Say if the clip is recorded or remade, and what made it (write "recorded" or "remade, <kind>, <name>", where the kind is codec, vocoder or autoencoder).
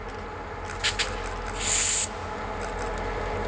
recorded